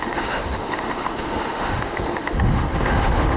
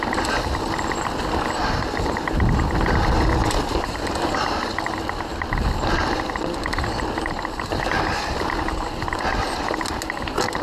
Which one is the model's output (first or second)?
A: first